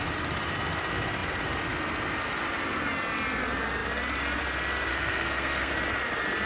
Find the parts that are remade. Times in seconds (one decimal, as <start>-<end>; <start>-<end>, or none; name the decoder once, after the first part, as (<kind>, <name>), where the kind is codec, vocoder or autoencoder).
4.9-5.7 (codec, SNAC)